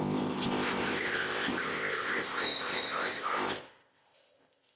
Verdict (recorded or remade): remade